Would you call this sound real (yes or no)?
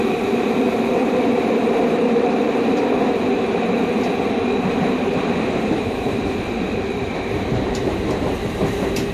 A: no